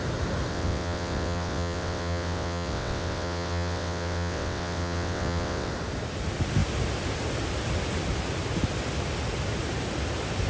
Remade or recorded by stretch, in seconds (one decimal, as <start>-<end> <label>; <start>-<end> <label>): 0.0-0.5 recorded; 0.5-5.7 remade; 5.7-10.5 recorded